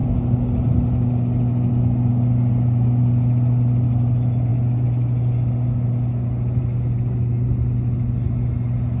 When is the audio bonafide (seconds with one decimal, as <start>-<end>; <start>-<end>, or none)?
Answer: 0.0-9.0